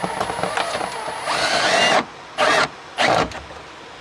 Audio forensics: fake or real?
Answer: real